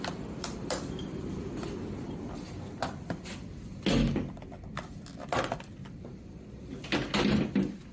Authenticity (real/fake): real